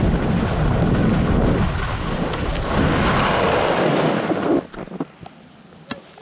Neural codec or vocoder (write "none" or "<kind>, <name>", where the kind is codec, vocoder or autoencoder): none